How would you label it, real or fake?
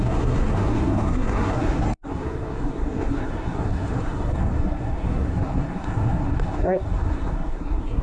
fake